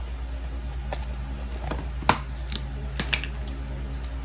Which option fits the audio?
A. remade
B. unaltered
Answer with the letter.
B